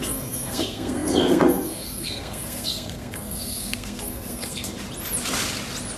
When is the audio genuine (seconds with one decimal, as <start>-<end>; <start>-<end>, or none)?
4.7-6.0

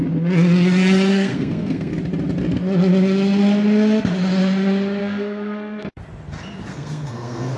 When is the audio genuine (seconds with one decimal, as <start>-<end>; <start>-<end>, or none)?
0.0-1.1; 1.9-5.0; 6.0-6.7

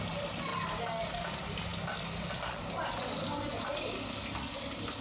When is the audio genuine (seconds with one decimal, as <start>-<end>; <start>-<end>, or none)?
0.0-5.0